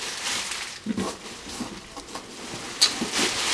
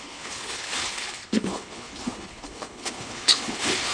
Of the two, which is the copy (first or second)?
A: second